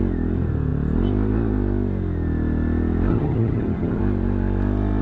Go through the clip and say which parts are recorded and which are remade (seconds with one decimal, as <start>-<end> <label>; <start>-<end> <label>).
0.0-3.1 recorded; 3.1-4.0 remade; 4.0-5.0 recorded